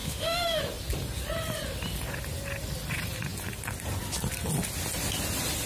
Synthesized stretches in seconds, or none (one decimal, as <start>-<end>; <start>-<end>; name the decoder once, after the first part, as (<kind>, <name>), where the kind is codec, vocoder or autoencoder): 0.0-0.6 (autoencoder, DAC-VAE)